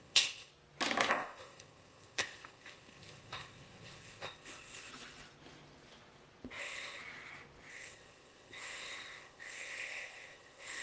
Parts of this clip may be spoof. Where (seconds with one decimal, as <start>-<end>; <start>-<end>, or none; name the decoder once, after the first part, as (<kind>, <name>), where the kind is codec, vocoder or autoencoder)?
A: 0.0-0.5 (codec, ZipCodec); 1.1-4.9; 6.6-7.0; 7.7-10.8